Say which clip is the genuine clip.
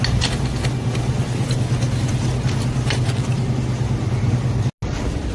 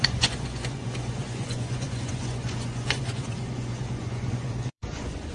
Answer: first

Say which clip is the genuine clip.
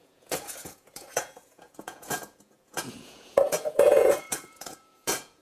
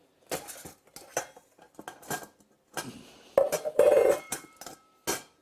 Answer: second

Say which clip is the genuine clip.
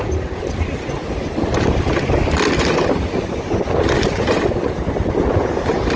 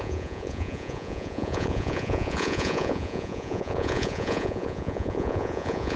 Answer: first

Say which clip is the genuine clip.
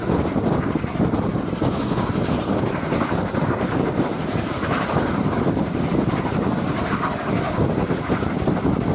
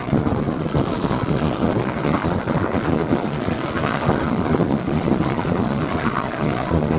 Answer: first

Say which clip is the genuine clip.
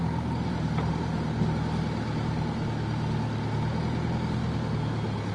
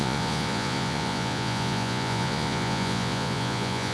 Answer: first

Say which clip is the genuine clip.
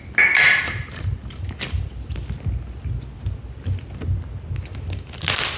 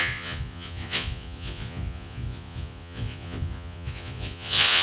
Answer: first